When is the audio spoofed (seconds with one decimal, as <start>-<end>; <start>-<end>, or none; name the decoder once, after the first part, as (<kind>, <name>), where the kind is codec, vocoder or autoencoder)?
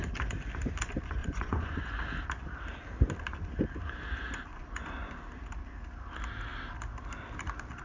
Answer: 1.2-2.0 (vocoder, Vocos); 4.5-5.1